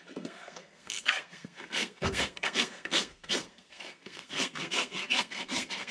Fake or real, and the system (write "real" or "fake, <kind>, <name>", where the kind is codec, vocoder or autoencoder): fake, codec, SNAC